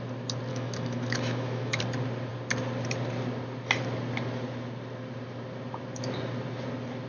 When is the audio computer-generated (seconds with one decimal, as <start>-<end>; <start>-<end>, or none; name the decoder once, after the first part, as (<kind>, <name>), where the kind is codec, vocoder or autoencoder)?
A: 0.5-1.8 (autoencoder, DAC-VAE)